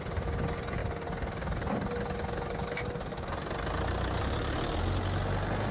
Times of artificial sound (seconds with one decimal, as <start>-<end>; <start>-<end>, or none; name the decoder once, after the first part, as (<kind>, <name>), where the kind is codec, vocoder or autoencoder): none